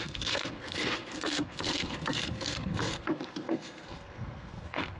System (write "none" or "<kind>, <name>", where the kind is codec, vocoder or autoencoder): codec, SNAC